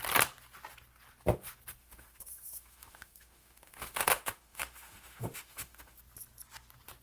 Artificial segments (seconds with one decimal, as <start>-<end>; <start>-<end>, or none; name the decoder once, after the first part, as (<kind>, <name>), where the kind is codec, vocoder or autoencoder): 1.8-6.0 (autoencoder, DAC-VAE)